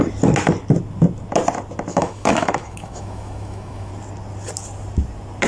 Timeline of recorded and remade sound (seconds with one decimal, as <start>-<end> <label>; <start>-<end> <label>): 0.0-1.9 recorded; 1.9-3.9 remade; 3.9-5.5 recorded